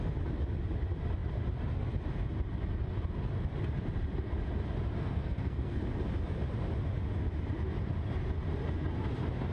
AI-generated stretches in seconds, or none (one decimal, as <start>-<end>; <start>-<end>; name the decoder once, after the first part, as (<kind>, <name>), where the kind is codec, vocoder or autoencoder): 5.0-5.8 (codec, SNAC)